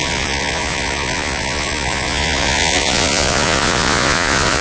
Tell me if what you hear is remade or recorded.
remade